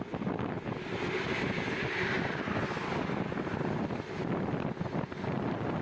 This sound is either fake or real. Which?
real